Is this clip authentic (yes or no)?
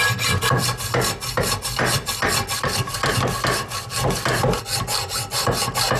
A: yes